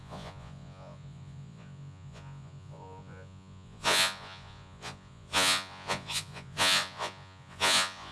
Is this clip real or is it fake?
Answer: fake